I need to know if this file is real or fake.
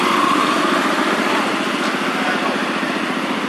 real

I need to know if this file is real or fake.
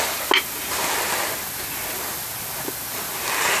real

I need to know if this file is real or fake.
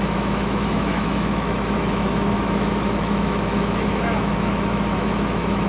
fake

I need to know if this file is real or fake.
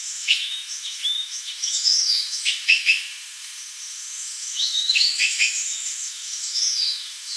fake